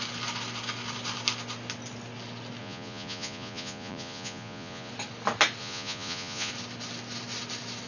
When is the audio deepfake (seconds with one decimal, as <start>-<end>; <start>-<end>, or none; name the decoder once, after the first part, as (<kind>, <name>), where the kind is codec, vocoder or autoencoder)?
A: 2.6-4.9 (vocoder, Vocos); 5.6-6.5